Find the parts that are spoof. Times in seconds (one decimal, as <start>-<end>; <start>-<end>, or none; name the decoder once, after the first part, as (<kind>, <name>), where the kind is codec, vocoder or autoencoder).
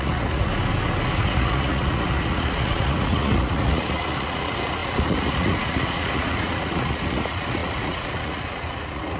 0.0-0.5 (vocoder, Vocos); 1.1-9.2